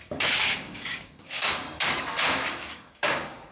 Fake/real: fake